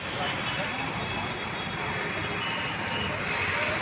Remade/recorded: recorded